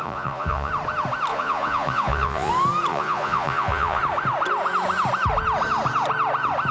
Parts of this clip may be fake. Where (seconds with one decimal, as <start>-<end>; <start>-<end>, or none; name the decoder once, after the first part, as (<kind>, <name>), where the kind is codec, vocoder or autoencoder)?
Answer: 0.0-0.7 (vocoder, Vocos); 1.3-2.5; 2.9-4.0